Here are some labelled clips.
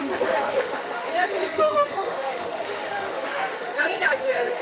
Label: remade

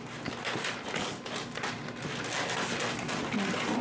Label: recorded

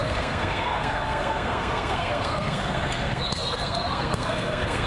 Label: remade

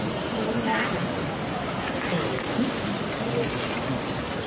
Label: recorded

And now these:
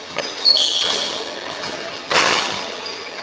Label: remade